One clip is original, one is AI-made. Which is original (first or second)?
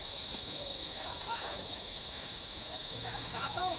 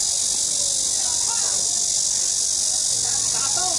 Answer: second